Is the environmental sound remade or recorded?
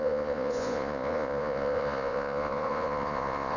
remade